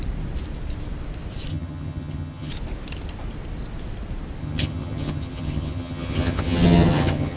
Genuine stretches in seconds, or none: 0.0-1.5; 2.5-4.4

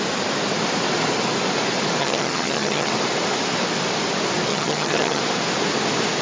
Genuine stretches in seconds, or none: 0.0-2.0; 2.9-4.5; 5.2-6.2

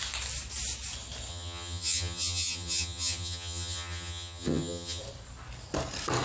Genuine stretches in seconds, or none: 0.0-1.3; 5.0-6.2

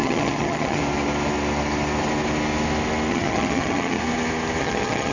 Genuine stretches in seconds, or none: 0.8-3.1; 4.0-4.6

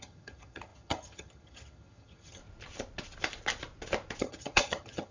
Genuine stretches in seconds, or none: 2.4-4.2

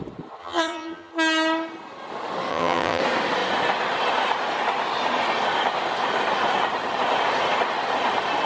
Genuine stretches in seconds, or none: 0.0-0.4; 1.1-2.5; 3.0-8.5